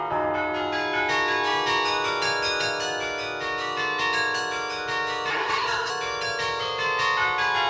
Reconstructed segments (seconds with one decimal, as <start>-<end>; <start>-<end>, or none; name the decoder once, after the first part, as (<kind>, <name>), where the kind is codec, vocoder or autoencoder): 5.3-5.9 (codec, SNAC)